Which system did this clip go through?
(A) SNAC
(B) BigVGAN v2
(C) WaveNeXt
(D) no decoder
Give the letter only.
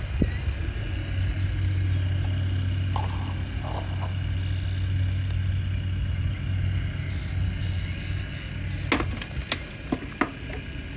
D